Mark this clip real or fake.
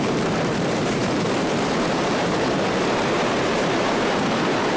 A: fake